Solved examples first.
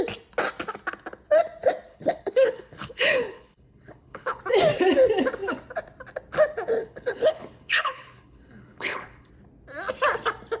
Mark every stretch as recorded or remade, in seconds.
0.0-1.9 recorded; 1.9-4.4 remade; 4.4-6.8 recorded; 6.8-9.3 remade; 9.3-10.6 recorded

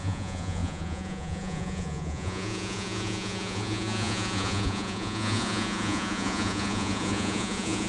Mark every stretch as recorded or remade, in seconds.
0.0-7.9 remade

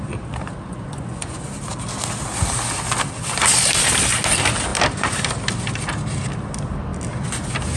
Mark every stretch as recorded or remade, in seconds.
0.0-0.7 recorded; 0.7-1.4 remade; 1.4-7.8 recorded